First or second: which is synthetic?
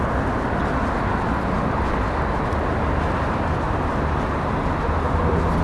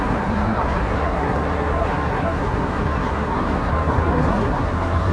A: second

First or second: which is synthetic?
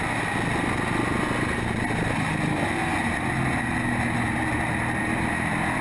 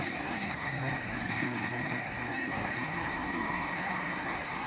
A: second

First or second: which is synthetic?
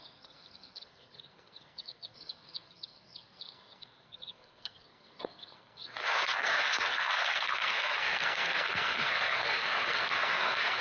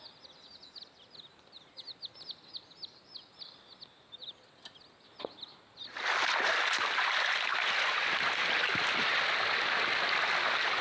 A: first